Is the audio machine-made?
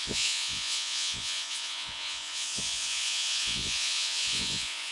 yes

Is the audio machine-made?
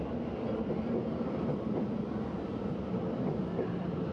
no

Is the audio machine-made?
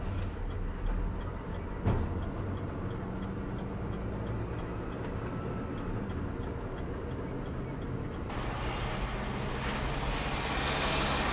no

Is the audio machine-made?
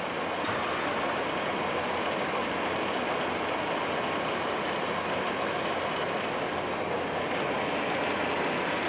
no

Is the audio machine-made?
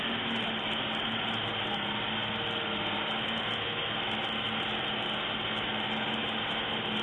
no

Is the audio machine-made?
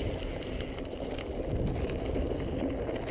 no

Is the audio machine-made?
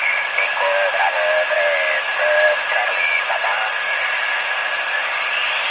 no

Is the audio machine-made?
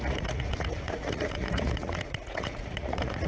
yes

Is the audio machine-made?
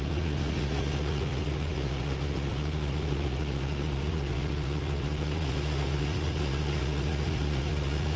yes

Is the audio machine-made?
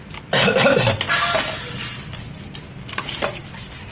no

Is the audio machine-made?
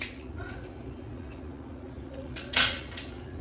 yes